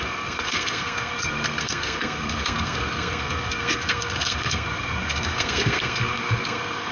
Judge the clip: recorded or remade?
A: remade